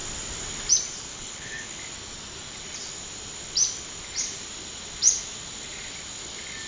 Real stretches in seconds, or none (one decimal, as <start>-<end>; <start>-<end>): 0.0-1.1; 1.8-6.7